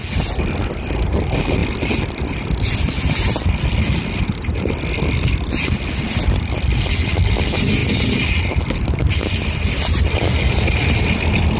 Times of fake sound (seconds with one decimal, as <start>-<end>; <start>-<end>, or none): none